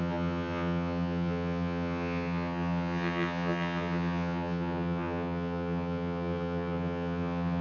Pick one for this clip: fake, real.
fake